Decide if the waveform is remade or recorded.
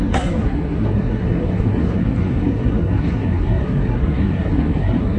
remade